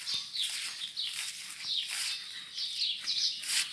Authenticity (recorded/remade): recorded